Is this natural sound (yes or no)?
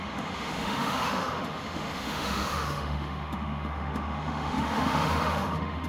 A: no